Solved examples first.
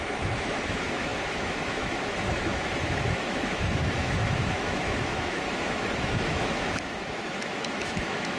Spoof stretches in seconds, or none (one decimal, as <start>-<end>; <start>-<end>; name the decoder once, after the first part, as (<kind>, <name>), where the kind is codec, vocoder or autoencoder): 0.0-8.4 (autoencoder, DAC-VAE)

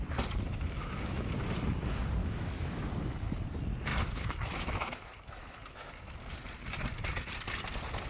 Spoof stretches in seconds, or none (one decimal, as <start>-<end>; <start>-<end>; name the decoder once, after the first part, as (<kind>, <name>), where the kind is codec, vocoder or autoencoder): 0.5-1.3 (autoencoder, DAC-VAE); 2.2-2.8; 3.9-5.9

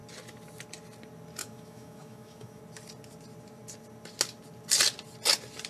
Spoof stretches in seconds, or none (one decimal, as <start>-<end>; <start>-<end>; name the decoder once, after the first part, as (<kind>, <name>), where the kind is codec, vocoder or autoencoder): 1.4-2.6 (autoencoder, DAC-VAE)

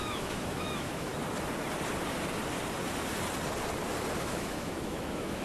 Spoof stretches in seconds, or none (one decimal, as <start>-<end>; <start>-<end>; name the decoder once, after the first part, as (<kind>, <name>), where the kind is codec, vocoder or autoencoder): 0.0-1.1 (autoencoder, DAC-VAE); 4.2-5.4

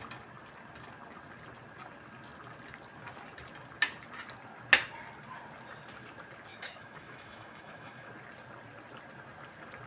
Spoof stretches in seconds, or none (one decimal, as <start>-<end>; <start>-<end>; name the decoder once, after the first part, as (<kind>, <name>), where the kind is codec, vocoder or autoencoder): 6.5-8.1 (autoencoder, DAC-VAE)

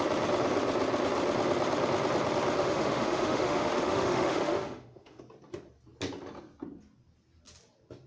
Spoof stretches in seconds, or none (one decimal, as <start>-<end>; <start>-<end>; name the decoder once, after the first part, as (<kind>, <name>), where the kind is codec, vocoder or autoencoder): 2.6-5.2 (autoencoder, DAC-VAE)